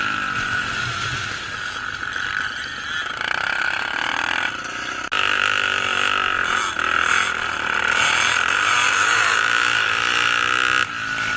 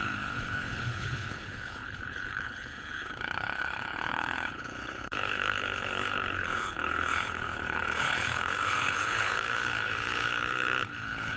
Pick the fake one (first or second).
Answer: second